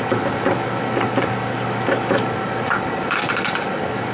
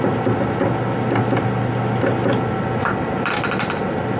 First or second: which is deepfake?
first